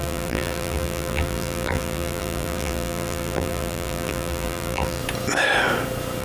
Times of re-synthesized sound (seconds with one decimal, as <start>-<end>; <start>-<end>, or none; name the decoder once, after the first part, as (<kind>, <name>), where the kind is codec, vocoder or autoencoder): 0.0-5.0 (vocoder, BigVGAN v2)